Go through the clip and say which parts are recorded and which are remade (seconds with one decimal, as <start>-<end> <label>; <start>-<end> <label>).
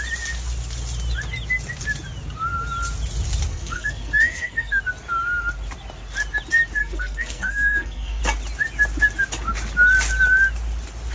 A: 0.0-3.5 recorded; 3.5-4.8 remade; 4.8-6.8 recorded; 6.8-8.2 remade; 8.2-11.1 recorded